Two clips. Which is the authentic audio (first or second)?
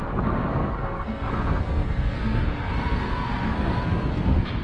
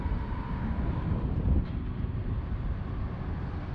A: second